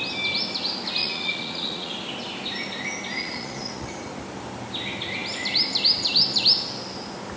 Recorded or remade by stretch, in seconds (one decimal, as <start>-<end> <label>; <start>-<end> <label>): 0.0-1.0 recorded; 1.0-1.9 remade; 1.9-3.2 recorded; 3.2-3.9 remade; 3.9-7.4 recorded